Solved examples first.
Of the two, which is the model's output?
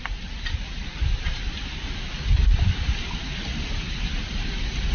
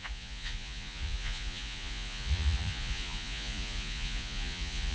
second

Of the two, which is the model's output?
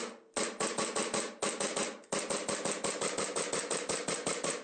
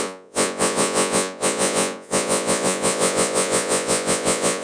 second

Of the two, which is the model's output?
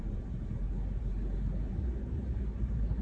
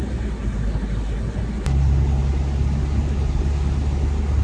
first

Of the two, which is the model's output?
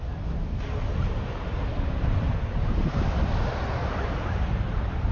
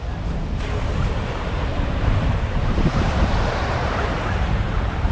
second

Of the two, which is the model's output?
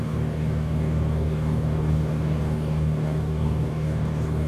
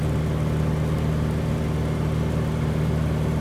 first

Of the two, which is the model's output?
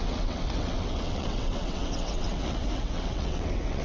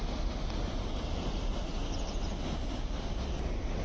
first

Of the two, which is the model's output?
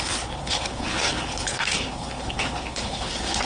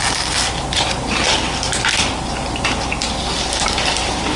first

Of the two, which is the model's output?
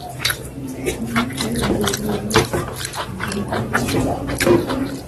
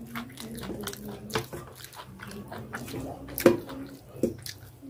first